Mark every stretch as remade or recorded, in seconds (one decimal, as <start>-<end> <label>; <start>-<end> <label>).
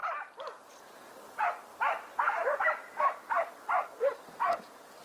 0.0-5.0 recorded